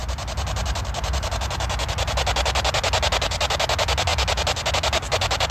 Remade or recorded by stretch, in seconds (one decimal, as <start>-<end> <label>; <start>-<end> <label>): 0.0-1.3 remade; 1.3-5.5 recorded